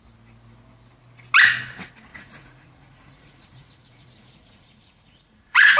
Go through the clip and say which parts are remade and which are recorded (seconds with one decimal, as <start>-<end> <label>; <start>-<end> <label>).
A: 0.0-2.1 recorded; 2.1-5.8 remade